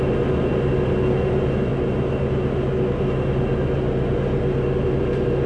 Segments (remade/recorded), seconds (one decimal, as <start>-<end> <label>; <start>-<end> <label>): 0.0-5.5 recorded